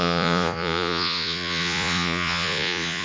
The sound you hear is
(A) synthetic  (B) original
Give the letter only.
A